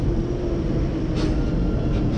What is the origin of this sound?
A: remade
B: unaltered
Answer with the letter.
B